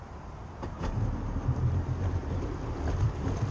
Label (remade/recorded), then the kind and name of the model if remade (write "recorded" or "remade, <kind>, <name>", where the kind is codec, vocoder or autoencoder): recorded